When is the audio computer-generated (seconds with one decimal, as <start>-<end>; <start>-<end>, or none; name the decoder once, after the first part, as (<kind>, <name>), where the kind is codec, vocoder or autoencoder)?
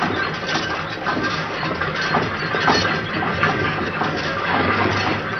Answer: 1.1-2.0 (codec, DAC); 3.3-4.9